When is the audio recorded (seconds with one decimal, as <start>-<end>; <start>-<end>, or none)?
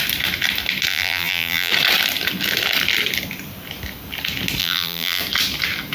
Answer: 0.0-0.9; 1.7-4.6; 5.2-5.9